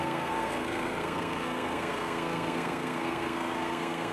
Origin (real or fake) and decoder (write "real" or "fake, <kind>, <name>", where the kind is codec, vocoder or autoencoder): fake, codec, SNAC